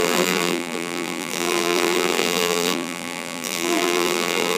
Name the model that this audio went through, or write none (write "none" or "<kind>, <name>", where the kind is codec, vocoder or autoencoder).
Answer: vocoder, BigVGAN v2